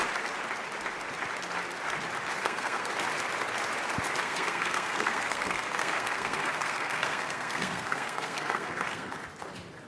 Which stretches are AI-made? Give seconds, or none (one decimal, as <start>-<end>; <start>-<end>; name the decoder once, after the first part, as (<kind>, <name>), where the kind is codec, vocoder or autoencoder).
2.4-2.9 (codec, SNAC); 4.2-9.2

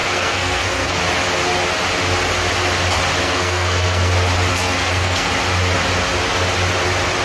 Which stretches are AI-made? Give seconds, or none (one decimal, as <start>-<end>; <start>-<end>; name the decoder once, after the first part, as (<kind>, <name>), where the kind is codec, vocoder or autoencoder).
0.0-1.0 (codec, SNAC); 3.2-4.1; 4.5-5.3